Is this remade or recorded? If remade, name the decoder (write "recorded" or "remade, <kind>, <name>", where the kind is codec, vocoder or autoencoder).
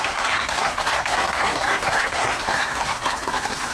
remade, codec, SNAC